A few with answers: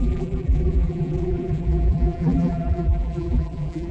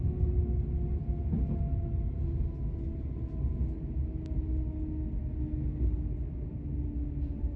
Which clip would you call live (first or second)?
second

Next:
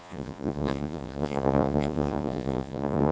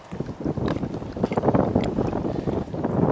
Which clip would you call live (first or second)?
second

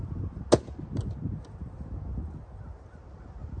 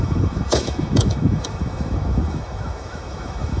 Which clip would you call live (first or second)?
first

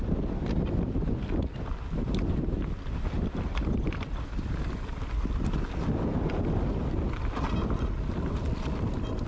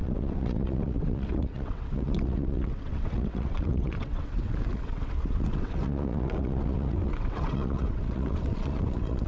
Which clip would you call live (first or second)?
first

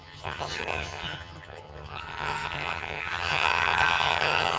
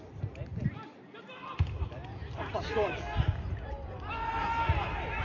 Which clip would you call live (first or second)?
second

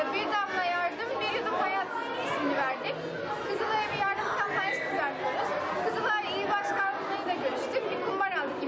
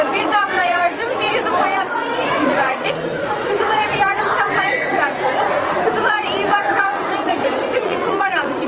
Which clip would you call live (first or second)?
first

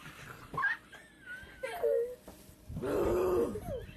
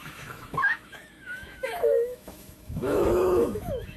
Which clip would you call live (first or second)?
first